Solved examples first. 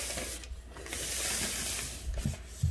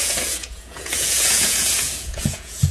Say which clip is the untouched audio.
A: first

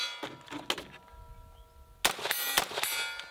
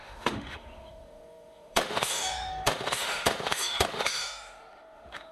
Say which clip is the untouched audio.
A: first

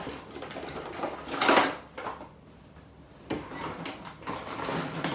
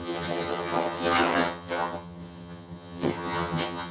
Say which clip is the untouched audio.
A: first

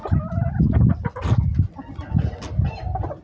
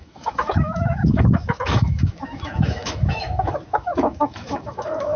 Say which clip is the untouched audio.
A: first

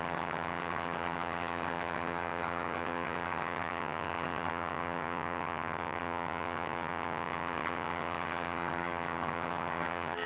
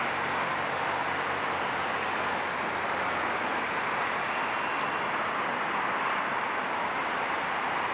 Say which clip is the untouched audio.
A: second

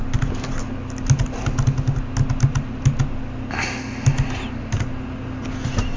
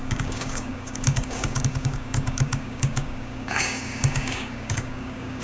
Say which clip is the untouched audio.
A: first